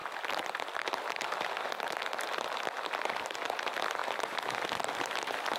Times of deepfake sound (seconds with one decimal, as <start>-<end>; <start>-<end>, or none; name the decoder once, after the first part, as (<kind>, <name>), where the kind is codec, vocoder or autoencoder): 4.0-5.6 (vocoder, BigVGAN v2)